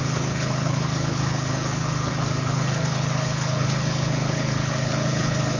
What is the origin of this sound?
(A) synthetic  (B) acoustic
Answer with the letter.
A